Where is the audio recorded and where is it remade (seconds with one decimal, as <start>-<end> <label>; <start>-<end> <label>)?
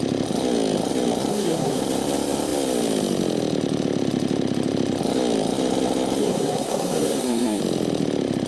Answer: 0.0-1.3 recorded; 1.3-1.8 remade; 1.8-6.2 recorded; 6.2-7.6 remade; 7.6-8.5 recorded